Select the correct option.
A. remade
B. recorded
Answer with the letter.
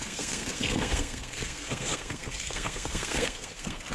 A